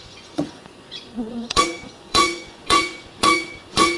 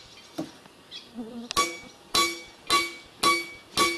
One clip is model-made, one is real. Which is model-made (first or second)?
first